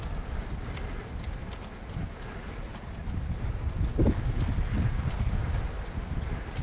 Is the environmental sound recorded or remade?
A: recorded